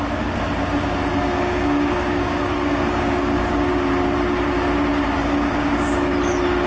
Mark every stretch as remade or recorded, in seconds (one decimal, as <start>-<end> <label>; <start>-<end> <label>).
0.0-1.1 recorded; 1.1-3.7 remade; 3.7-5.2 recorded; 5.2-6.1 remade; 6.1-6.7 recorded